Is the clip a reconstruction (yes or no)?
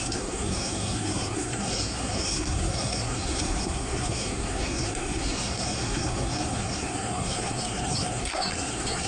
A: yes